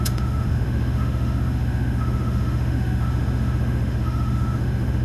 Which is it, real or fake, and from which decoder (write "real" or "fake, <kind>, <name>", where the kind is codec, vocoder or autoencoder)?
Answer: fake, autoencoder, DAC-VAE